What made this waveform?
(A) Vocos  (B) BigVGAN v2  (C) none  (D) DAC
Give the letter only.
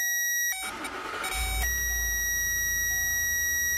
C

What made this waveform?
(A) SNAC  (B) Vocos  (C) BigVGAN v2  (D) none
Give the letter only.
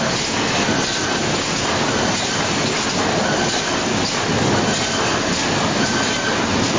D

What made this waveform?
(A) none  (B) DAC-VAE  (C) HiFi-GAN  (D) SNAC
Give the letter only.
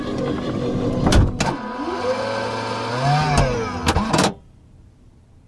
A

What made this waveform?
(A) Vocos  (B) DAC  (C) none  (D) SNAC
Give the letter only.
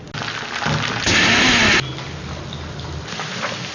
C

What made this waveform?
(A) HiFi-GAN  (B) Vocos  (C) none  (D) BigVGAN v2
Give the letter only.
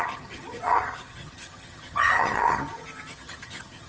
A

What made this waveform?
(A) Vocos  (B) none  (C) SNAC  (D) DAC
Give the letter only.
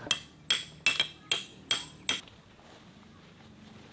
B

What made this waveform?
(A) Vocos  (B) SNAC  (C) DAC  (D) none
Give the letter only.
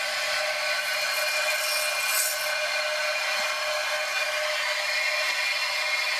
D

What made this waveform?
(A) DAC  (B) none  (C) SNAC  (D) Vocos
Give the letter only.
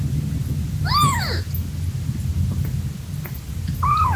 B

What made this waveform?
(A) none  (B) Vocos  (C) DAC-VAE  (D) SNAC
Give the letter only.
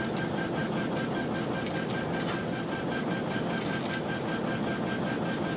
A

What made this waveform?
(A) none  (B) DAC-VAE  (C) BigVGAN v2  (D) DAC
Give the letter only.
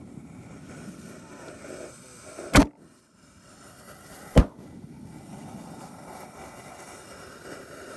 A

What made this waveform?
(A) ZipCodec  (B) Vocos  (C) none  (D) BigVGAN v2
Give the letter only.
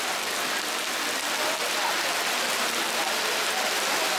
C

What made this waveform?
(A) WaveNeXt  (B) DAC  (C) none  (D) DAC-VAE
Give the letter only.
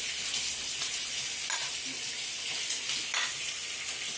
C